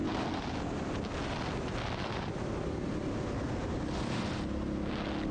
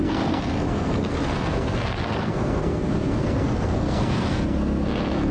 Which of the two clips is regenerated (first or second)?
second